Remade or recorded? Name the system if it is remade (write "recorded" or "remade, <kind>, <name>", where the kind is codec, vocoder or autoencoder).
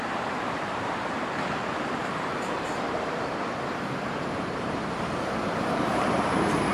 remade, vocoder, BigVGAN v2